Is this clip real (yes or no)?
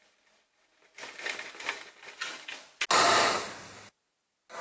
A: yes